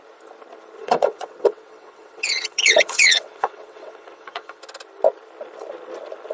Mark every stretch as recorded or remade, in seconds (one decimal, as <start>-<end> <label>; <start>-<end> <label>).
0.0-0.8 recorded; 0.8-4.6 remade; 4.6-6.3 recorded